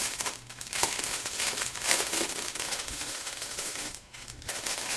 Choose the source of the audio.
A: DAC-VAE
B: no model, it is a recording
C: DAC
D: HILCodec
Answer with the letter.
A